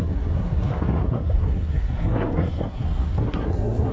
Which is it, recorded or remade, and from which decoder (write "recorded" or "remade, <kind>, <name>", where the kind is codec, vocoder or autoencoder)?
remade, codec, SNAC